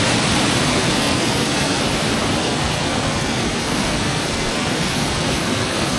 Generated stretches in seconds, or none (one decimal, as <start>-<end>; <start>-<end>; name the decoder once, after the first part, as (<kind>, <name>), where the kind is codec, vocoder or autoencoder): 0.7-1.8 (codec, SNAC); 2.4-6.0